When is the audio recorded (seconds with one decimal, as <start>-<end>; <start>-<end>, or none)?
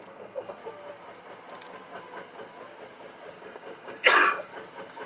0.6-3.3; 4.5-5.1